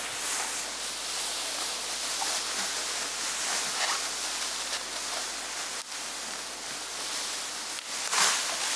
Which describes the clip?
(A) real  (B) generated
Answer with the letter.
A